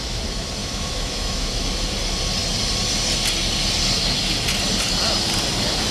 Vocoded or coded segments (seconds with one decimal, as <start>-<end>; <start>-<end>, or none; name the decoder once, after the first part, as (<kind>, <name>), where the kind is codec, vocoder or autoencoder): 0.6-1.5 (autoencoder, DAC-VAE)